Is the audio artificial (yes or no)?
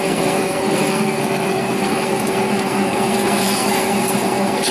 yes